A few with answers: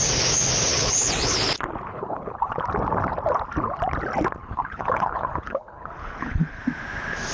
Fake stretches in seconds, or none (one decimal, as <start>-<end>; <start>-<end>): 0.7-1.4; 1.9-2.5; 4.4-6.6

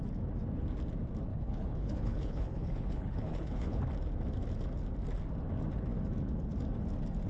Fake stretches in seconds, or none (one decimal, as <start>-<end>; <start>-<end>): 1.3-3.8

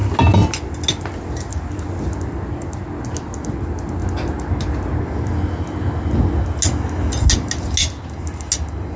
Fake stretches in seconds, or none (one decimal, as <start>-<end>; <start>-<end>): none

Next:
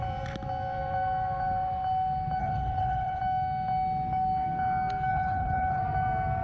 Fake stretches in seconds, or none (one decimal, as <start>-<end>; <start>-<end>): 2.4-3.2; 5.1-5.8

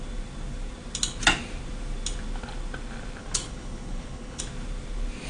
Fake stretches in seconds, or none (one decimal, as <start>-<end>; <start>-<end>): 3.2-4.4

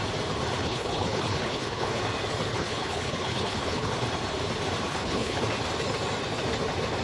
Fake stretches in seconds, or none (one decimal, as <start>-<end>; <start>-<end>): 0.6-2.0; 2.5-3.9; 4.9-5.4

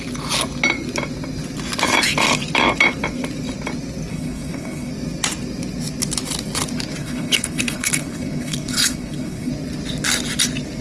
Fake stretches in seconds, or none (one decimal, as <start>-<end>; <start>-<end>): 4.1-4.9; 7.0-9.5

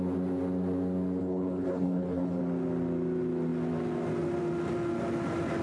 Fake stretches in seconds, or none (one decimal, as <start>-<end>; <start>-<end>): 1.2-2.4